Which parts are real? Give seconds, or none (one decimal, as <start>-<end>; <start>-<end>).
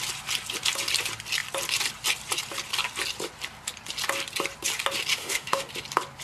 0.0-5.1; 5.7-6.2